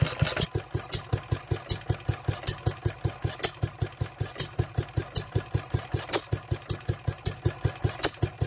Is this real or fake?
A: real